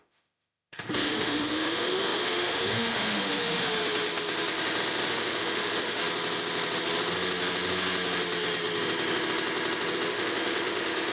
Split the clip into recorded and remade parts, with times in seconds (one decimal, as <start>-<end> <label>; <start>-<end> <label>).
0.0-3.8 remade; 3.8-5.1 recorded; 5.1-6.0 remade; 6.0-10.1 recorded; 10.1-11.1 remade